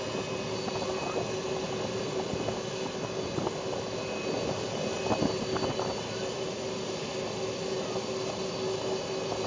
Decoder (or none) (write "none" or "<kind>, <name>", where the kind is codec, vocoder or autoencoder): none